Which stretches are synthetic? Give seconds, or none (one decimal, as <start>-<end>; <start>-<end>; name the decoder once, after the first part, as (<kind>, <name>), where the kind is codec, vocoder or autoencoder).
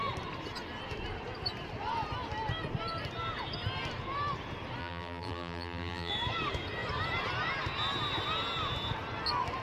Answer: 4.8-6.1 (vocoder, BigVGAN v2)